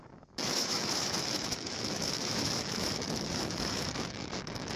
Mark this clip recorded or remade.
remade